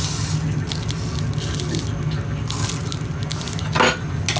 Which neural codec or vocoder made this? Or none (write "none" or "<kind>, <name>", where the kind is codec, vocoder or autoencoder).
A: none